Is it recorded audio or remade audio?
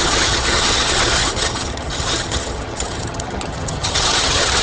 remade